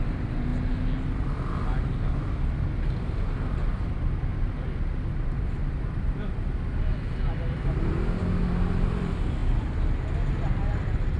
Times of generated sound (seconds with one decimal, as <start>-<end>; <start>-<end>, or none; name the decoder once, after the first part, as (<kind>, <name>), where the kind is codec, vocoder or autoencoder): 0.0-0.5 (vocoder, BigVGAN v2); 2.1-4.3; 5.1-9.4; 10.7-11.2